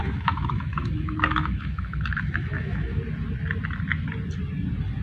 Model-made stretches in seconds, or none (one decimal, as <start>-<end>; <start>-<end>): 0.0-3.0